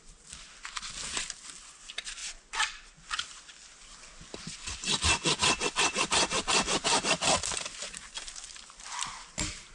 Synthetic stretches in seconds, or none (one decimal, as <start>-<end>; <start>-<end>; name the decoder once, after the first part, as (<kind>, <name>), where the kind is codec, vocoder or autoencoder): none